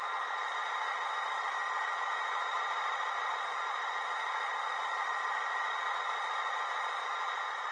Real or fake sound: fake